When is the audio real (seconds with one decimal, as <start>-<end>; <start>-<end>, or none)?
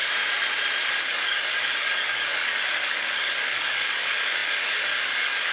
0.0-0.9